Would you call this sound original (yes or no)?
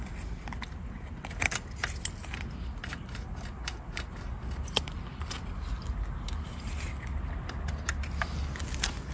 yes